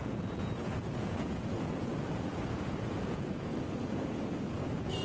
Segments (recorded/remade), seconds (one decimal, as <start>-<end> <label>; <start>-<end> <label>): 0.0-5.0 remade